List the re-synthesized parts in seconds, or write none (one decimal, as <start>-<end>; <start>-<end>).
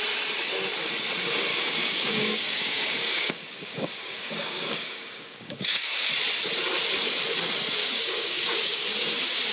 1.5-6.1; 7.8-8.8